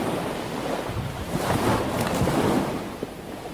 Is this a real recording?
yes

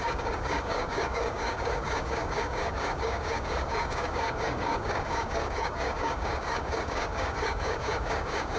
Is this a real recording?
no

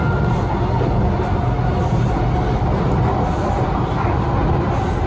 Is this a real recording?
yes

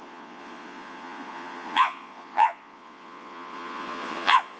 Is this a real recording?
no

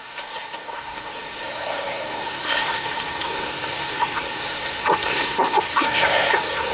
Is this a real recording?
no